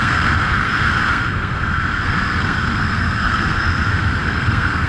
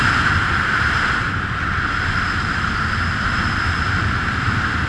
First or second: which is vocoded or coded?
first